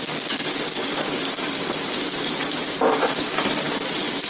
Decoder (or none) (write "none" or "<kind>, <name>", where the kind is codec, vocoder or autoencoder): none